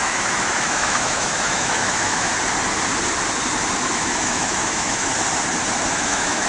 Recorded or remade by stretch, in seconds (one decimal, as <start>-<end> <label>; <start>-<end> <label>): 0.0-2.3 remade; 2.3-3.9 recorded; 3.9-5.1 remade; 5.1-5.9 recorded; 5.9-6.5 remade